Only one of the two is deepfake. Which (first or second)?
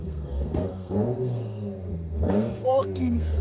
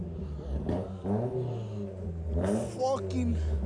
first